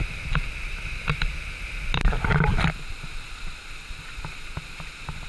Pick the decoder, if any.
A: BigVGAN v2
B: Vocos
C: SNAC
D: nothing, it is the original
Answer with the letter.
D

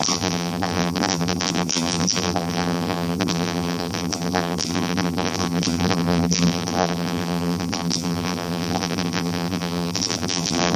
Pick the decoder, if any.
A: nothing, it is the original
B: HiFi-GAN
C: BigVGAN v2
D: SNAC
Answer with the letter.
C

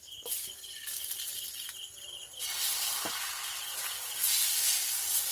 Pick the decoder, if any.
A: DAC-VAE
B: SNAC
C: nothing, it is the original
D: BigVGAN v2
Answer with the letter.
C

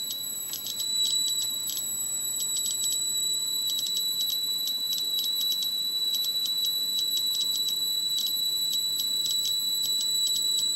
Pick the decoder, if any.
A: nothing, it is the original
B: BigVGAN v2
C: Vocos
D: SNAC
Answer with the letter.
B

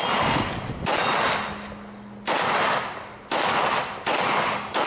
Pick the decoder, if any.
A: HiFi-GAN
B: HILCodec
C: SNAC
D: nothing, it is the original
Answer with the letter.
D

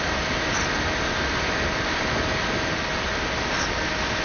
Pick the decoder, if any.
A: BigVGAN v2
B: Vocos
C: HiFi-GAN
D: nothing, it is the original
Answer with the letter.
D